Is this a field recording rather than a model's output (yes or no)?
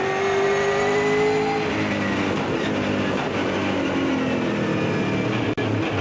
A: yes